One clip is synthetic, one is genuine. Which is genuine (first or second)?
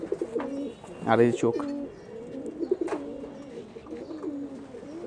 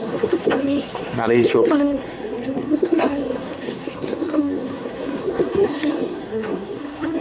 first